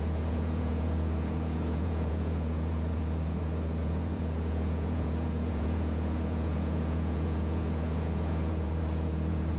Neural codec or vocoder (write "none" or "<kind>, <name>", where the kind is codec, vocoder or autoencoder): vocoder, Vocos